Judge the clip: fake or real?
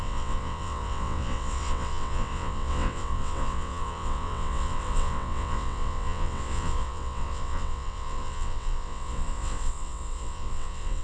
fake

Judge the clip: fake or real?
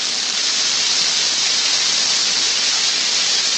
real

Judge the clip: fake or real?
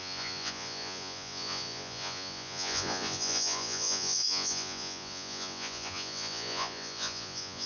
fake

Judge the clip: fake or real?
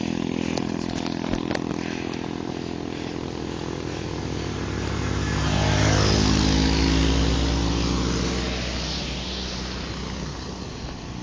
real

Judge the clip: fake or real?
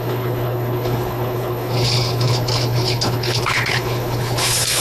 fake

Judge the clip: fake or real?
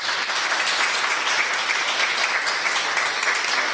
real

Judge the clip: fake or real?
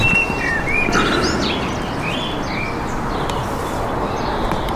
real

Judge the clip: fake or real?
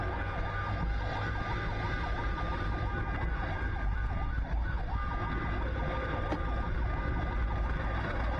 real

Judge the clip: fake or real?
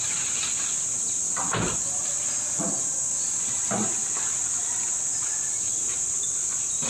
real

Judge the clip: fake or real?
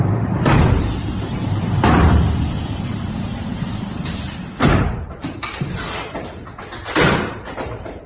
fake